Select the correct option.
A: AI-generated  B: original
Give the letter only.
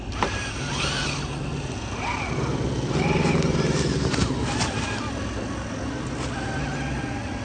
B